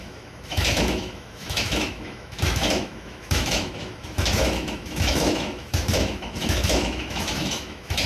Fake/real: fake